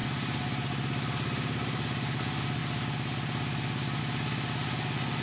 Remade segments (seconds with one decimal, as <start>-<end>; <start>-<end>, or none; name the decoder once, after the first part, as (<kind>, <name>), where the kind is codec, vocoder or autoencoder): none